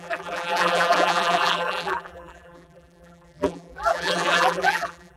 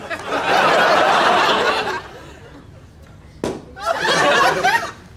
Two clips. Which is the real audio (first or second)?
second